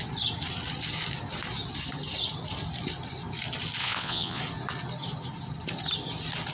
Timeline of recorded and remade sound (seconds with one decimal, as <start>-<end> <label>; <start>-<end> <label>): 0.0-3.8 recorded; 3.8-4.4 remade; 4.4-6.5 recorded